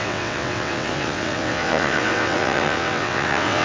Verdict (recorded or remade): remade